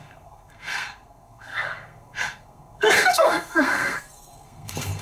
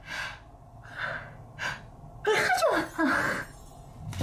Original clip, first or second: second